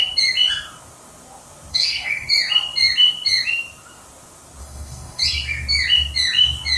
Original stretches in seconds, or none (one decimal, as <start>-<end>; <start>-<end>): 0.0-1.7; 2.3-4.6; 5.2-6.8